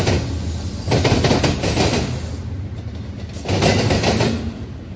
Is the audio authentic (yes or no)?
yes